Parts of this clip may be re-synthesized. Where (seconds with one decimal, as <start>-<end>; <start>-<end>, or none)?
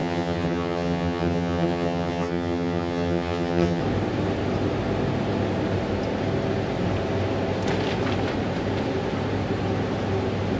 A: 0.0-3.8